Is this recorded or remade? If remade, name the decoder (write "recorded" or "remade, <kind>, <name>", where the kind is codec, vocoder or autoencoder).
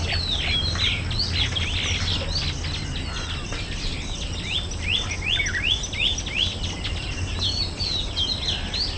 recorded